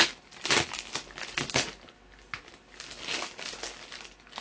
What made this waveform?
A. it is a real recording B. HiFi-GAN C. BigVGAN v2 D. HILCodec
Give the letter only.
A